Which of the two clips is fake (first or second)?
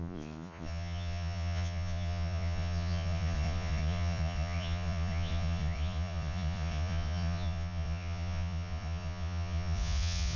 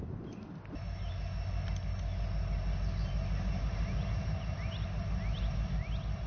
first